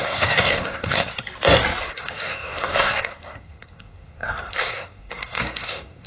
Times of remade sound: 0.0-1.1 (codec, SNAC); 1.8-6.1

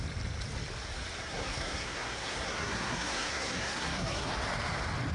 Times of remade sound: 1.2-4.3 (codec, SNAC)

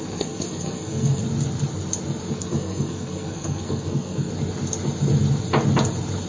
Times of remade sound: 0.0-1.2 (codec, SNAC); 2.3-4.3

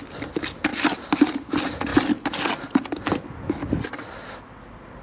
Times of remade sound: none

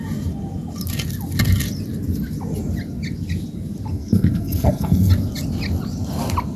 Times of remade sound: 3.9-5.1 (codec, SNAC)